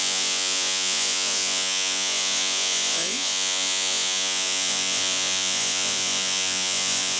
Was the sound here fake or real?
fake